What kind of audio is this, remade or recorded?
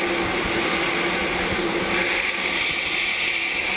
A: recorded